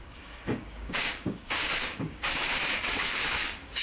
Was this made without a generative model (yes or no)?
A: no